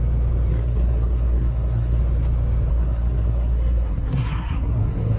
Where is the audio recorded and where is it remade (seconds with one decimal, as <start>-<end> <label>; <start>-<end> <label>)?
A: 0.0-0.5 recorded; 0.5-2.0 remade; 2.0-2.7 recorded; 2.7-5.2 remade